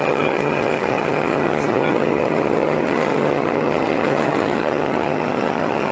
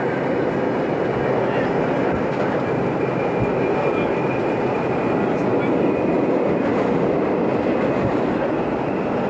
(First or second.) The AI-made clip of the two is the first